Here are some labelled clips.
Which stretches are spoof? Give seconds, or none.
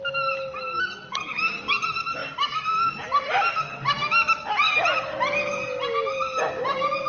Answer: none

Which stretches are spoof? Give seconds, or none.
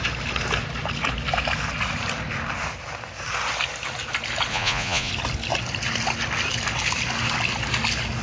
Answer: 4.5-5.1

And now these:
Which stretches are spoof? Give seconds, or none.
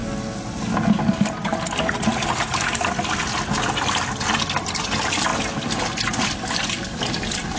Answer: none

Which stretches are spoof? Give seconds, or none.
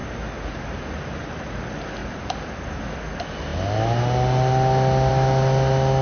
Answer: 0.0-0.9; 2.0-2.8